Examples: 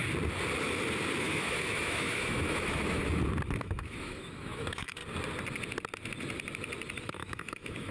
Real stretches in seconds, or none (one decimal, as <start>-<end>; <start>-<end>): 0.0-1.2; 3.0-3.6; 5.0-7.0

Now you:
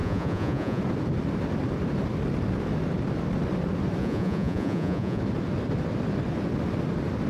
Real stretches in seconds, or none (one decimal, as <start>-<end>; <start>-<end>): 0.8-4.0; 5.2-7.3

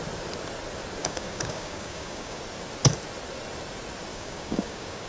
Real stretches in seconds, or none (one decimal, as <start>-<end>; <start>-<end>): 0.0-1.0; 2.4-4.1

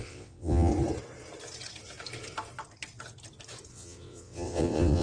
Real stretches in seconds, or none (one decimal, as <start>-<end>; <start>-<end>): 0.7-3.7